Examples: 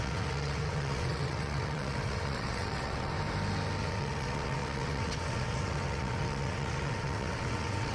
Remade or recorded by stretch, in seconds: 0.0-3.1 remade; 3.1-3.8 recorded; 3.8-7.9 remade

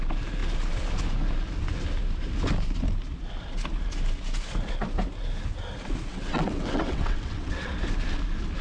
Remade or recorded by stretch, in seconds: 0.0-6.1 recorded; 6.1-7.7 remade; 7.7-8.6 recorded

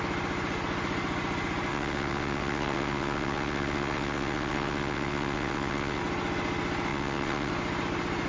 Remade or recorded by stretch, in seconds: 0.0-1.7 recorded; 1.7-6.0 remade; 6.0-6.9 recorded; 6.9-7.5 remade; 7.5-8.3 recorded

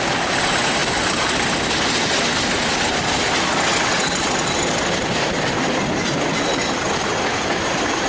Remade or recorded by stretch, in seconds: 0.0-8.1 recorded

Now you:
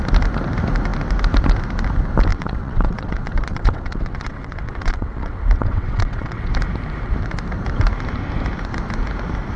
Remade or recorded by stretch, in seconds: 0.0-2.3 recorded; 2.3-6.5 remade; 6.5-9.6 recorded

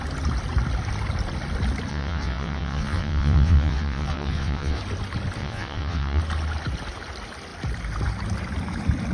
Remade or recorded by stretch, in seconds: 0.0-1.9 recorded; 1.9-4.8 remade; 4.8-5.4 recorded; 5.4-6.2 remade; 6.2-9.1 recorded